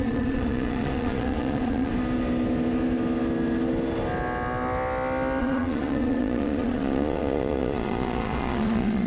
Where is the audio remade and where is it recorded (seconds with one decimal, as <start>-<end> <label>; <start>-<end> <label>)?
0.0-1.9 remade; 1.9-5.4 recorded; 5.4-9.1 remade